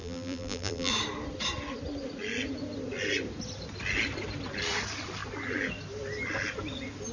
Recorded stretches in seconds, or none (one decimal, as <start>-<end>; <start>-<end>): 0.9-7.1